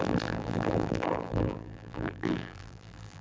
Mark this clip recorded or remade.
remade